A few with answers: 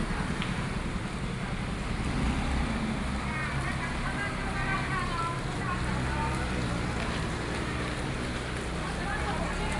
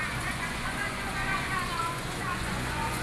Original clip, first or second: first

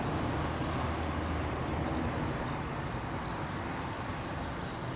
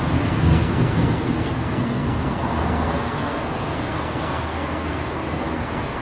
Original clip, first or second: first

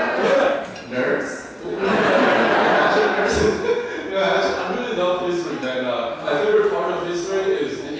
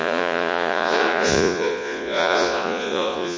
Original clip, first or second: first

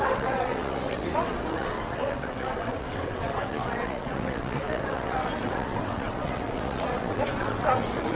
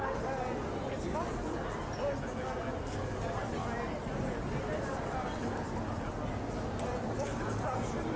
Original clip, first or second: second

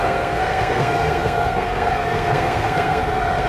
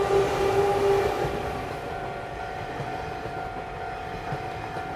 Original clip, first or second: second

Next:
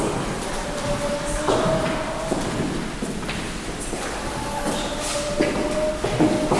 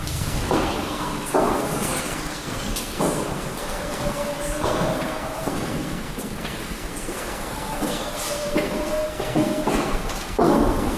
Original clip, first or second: first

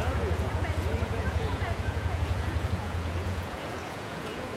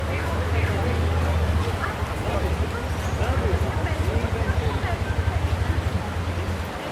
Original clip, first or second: second